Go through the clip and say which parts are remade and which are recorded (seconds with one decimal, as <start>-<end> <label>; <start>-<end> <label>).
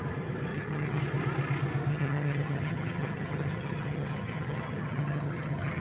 0.0-0.5 recorded; 0.5-1.0 remade; 1.0-1.9 recorded; 1.9-5.8 remade